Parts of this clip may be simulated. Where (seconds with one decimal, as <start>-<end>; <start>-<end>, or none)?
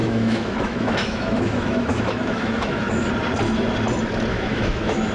0.0-3.1; 4.3-5.1